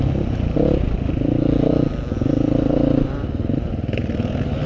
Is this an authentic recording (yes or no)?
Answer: yes